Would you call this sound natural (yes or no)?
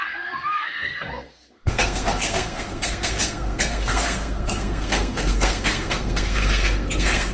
no